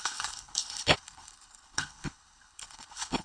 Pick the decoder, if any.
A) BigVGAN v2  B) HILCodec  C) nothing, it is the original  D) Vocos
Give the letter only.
B